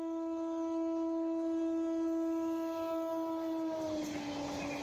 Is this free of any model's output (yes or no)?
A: yes